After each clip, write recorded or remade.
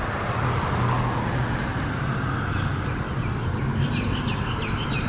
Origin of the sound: recorded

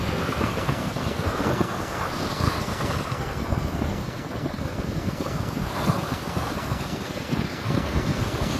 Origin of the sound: remade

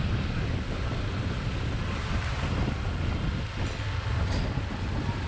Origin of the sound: recorded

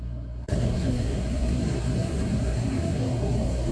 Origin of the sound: remade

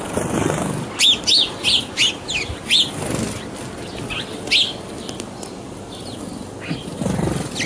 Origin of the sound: recorded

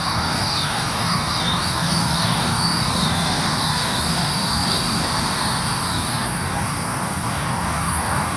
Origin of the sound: remade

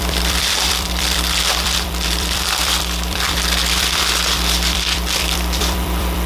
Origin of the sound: remade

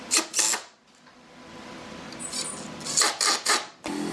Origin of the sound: recorded